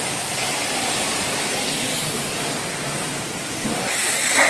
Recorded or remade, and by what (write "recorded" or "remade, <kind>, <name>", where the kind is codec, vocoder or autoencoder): recorded